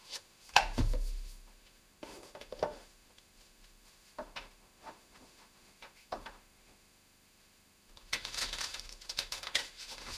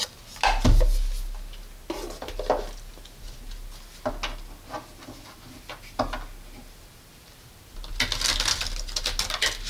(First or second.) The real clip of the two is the second